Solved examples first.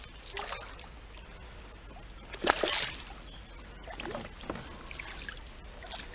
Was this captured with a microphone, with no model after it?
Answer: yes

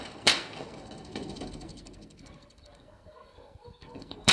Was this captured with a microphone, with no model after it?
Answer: no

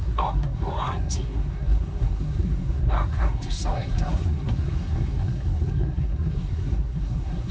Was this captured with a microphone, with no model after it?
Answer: no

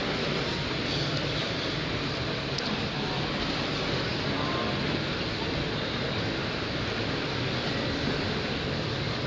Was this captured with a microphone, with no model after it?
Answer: yes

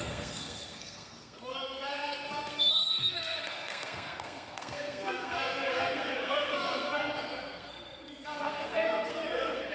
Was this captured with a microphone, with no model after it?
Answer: no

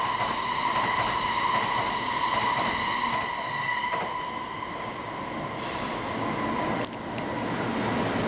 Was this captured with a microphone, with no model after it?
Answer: yes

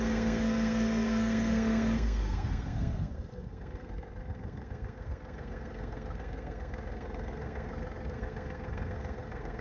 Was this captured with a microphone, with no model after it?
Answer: no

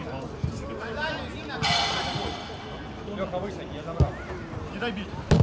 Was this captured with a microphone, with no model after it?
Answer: yes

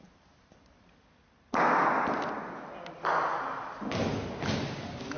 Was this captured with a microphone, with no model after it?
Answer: yes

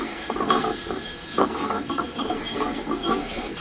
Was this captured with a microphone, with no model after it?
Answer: no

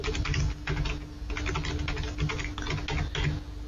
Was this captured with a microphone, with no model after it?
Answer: yes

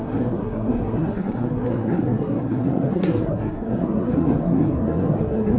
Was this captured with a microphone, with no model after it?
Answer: no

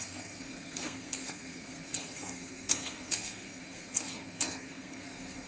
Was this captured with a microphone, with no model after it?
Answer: no